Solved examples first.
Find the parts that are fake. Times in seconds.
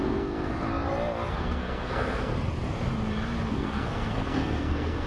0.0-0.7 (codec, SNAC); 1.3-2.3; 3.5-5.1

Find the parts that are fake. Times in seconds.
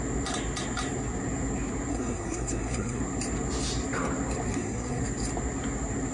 1.9-3.0 (codec, SNAC); 4.5-5.0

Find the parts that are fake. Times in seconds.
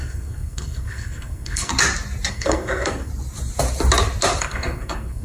0.0-1.7 (codec, SNAC); 2.3-3.1; 4.4-5.2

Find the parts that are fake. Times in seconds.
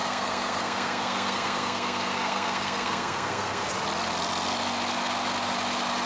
0.0-3.7 (codec, SNAC)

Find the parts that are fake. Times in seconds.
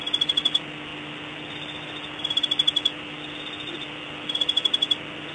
none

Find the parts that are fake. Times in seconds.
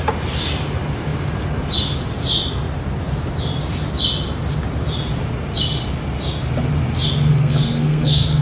7.3-8.4 (codec, SNAC)